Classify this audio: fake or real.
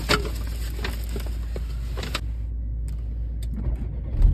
real